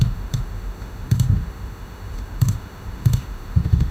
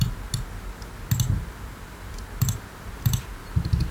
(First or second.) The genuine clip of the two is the second